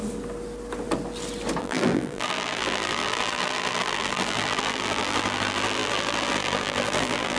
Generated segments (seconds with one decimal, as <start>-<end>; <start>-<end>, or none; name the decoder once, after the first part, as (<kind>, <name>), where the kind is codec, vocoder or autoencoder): 1.6-7.4 (vocoder, BigVGAN v2)